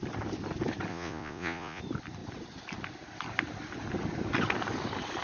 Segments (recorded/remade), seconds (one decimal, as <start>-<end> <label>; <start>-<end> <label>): 0.0-0.9 recorded; 0.9-1.8 remade; 1.8-5.2 recorded